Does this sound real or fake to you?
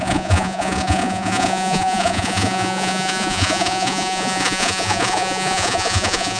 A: fake